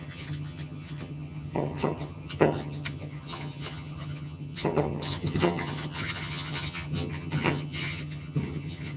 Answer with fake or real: fake